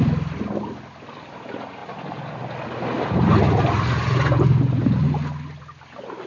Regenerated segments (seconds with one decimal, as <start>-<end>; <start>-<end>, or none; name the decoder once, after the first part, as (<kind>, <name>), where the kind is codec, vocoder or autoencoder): none